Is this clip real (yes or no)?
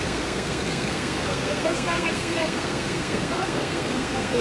no